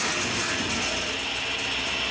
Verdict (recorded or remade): recorded